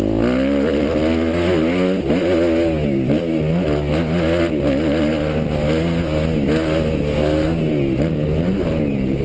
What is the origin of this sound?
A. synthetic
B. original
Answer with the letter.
B